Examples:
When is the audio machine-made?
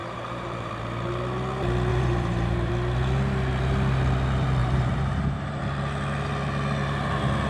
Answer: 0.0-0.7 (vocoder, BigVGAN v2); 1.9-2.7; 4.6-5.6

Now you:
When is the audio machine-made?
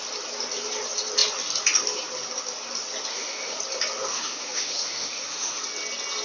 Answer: 3.1-3.6 (autoencoder, DAC-VAE); 4.1-5.6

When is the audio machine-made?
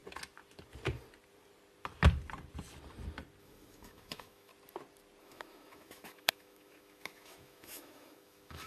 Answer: 3.4-4.5 (autoencoder, DAC-VAE); 5.2-8.7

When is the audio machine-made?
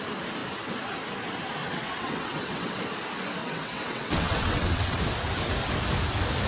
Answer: 1.6-2.8 (vocoder, WaveNeXt); 3.4-5.0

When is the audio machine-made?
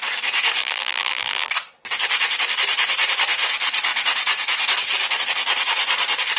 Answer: 0.6-1.5 (vocoder, BigVGAN v2)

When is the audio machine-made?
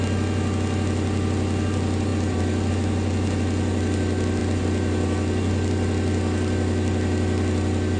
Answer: none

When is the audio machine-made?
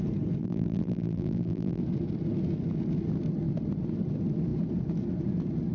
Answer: 0.4-1.8 (vocoder, BigVGAN v2)